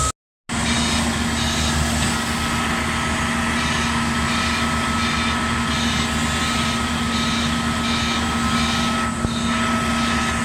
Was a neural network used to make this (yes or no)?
no